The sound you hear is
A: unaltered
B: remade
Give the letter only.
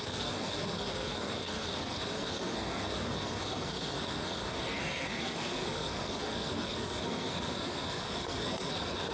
B